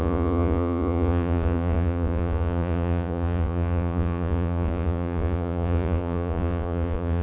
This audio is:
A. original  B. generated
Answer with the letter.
B